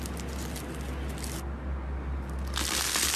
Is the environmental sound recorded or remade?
recorded